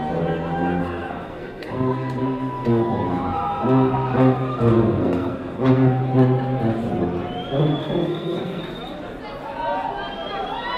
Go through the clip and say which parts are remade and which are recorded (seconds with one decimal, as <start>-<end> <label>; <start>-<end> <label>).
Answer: 0.0-0.8 recorded; 0.8-6.0 remade; 6.0-7.8 recorded; 7.8-8.6 remade; 8.6-10.8 recorded